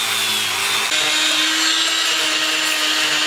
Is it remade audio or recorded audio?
recorded